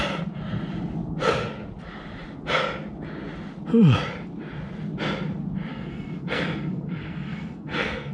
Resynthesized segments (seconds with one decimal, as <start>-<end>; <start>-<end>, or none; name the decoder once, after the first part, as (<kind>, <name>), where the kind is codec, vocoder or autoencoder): 5.7-8.1 (codec, SNAC)